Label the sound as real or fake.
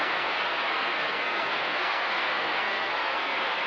fake